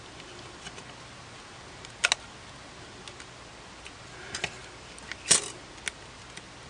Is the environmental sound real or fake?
real